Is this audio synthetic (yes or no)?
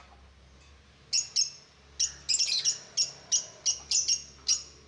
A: no